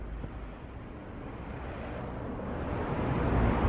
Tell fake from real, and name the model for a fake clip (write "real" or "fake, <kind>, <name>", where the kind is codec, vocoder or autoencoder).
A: real